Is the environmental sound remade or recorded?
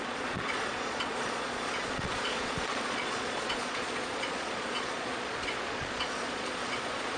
remade